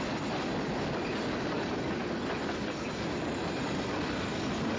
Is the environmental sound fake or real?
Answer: real